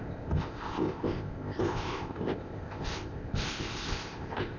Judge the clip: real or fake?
fake